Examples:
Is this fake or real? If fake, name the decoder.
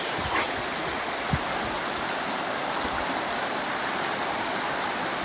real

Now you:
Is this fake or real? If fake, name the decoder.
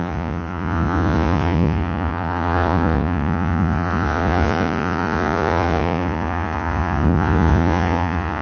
fake, vocoder, Vocos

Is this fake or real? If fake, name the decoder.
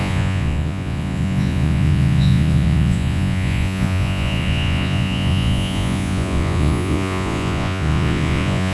fake, vocoder, Vocos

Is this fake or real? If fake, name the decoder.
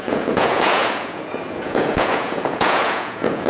fake, vocoder, Vocos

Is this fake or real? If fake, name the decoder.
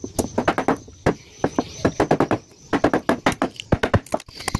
real